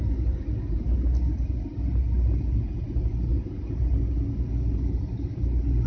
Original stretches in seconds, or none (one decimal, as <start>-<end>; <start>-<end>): 0.0-3.3; 4.0-5.9

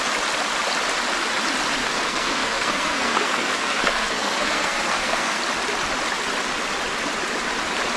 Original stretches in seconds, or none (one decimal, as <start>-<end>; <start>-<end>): 0.0-1.8; 5.4-8.0

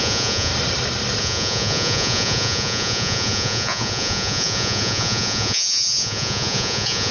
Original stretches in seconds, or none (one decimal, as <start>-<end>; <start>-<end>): 0.5-1.2

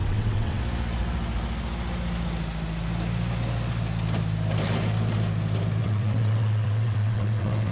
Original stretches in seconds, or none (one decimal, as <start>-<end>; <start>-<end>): 0.6-5.8

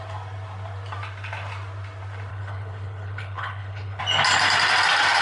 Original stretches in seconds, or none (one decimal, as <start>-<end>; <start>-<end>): 0.0-2.3; 4.0-5.2

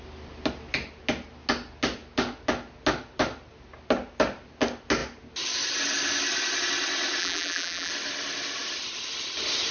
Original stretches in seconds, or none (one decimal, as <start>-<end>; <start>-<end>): 0.0-7.2; 7.9-9.7

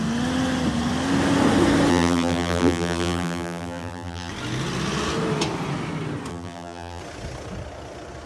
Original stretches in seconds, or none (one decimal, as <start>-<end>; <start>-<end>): 0.0-1.9; 4.3-6.3; 7.0-8.3